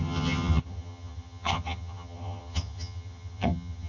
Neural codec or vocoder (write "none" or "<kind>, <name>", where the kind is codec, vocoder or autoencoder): vocoder, HiFi-GAN